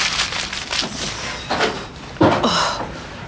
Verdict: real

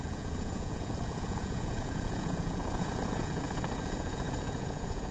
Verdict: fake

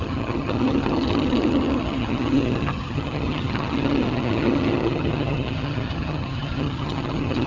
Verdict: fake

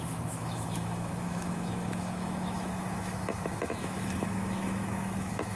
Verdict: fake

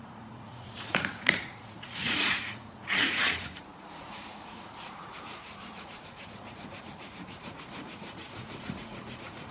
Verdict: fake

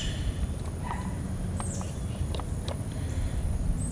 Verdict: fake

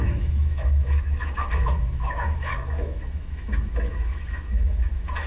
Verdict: fake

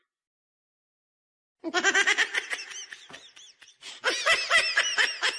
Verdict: real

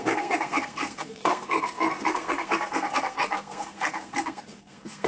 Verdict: fake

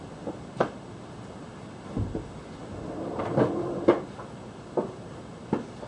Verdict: real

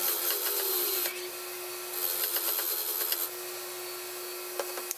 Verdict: real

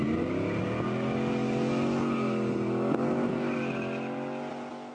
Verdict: real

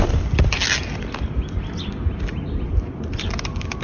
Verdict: real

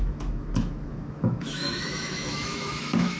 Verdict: fake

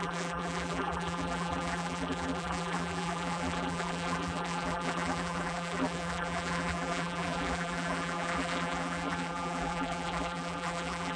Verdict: fake